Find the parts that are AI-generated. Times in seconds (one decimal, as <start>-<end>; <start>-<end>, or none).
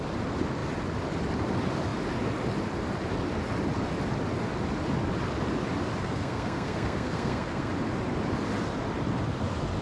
6.0-7.7